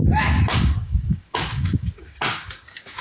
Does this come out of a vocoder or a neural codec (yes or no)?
yes